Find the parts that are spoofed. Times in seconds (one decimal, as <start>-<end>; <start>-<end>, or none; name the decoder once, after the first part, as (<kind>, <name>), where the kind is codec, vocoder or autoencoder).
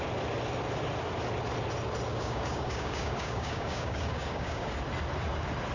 2.1-4.7 (codec, DAC)